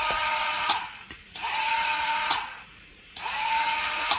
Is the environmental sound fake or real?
fake